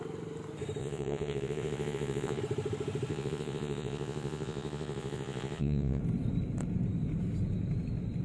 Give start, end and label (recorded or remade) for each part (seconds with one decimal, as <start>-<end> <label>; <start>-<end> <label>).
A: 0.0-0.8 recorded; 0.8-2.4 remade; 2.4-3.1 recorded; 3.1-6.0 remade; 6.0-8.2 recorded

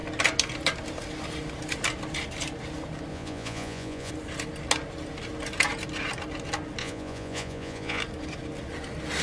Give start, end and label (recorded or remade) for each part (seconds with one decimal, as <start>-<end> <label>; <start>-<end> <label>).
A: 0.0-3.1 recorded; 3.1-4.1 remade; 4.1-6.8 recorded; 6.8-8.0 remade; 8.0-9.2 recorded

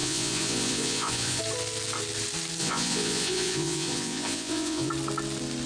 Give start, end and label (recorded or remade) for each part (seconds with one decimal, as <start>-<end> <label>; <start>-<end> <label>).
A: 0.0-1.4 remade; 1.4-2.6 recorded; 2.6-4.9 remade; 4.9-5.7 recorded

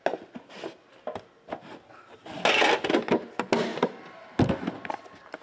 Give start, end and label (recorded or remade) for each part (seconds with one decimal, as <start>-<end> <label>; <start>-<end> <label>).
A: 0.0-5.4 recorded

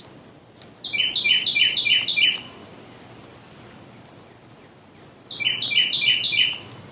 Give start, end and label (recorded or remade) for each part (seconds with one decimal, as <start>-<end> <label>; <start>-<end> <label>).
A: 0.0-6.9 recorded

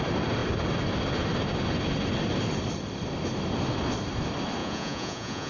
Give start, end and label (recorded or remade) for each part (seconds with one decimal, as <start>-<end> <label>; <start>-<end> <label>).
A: 0.0-4.6 recorded; 4.6-5.5 remade

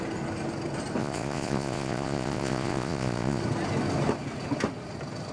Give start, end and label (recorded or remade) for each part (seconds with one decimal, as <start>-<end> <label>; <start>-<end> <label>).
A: 0.0-1.0 recorded; 1.0-3.4 remade; 3.4-5.3 recorded

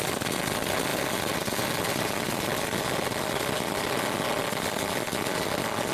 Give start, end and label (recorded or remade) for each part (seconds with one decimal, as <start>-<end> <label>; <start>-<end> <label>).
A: 0.0-5.9 recorded